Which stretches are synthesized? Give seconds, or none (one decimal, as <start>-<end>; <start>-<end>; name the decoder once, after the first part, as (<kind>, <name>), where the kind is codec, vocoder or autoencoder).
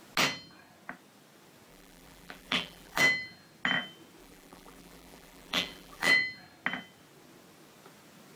1.7-3.0 (vocoder, BigVGAN v2); 4.2-6.1